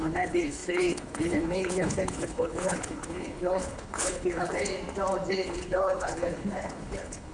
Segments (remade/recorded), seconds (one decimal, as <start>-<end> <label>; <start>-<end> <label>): 0.0-4.7 remade; 4.7-5.3 recorded; 5.3-7.3 remade

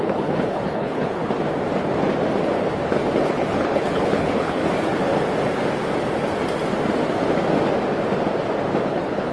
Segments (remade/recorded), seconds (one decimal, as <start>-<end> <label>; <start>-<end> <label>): 0.0-1.2 remade; 1.2-3.2 recorded; 3.2-4.6 remade; 4.6-8.9 recorded; 8.9-9.3 remade

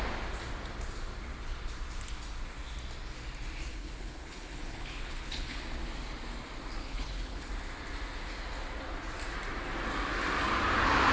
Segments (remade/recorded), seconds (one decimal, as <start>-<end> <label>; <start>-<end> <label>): 0.0-3.7 recorded; 3.7-5.6 remade; 5.6-6.8 recorded; 6.8-7.5 remade; 7.5-11.1 recorded

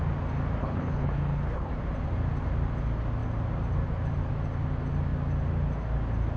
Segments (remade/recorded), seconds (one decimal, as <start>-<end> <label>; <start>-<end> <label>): 0.0-0.6 recorded; 0.6-1.7 remade; 1.7-6.4 recorded